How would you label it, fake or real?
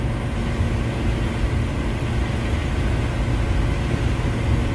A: real